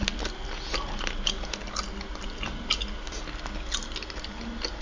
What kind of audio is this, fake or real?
real